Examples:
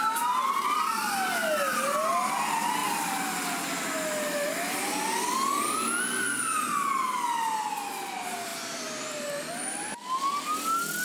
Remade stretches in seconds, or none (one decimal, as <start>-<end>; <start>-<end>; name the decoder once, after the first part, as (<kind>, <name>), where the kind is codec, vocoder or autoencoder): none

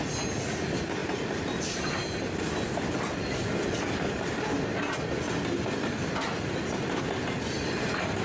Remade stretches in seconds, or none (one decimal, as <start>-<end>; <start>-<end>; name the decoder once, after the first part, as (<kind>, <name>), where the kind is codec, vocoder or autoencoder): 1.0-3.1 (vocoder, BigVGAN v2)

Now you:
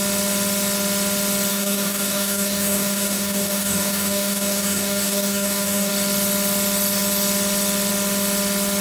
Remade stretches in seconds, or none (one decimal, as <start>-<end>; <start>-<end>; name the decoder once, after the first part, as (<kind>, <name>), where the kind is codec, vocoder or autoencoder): 1.5-5.9 (codec, DAC)

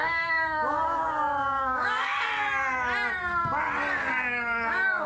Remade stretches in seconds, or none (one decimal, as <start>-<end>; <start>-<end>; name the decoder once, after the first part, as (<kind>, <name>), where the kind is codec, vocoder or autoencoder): 0.0-2.3 (codec, DAC); 4.1-5.1

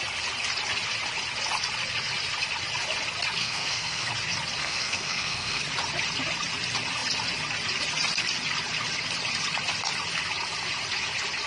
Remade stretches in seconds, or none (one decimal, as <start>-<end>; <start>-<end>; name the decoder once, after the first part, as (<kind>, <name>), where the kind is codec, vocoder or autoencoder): 3.4-4.1 (codec, SNAC); 4.6-5.6